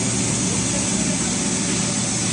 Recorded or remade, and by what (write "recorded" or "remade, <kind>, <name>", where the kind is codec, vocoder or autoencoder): recorded